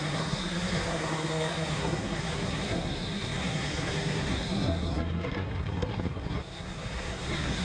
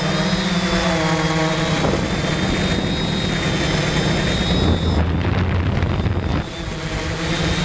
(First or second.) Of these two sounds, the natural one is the second